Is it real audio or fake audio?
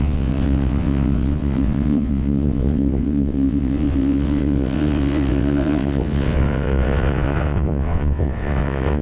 fake